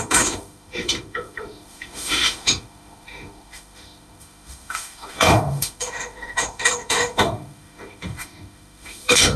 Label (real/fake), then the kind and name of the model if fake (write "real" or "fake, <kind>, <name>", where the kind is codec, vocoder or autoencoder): fake, autoencoder, DAC-VAE